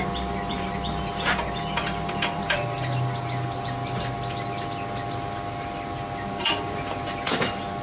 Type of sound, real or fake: real